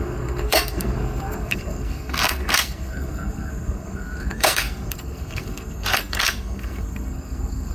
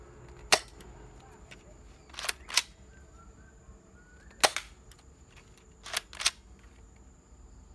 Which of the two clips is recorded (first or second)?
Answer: second